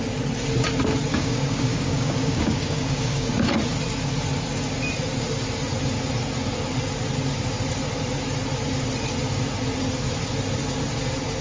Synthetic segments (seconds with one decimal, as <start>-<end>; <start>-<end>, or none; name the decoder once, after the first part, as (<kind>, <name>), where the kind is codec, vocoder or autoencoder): 1.1-3.5 (codec, DAC)